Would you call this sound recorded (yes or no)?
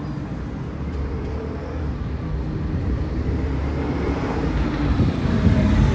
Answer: no